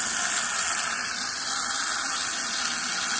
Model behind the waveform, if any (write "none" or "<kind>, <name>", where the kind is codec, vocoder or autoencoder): none